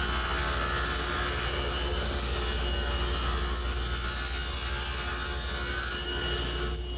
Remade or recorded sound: recorded